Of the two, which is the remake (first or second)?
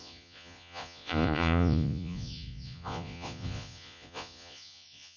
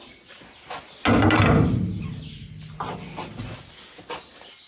first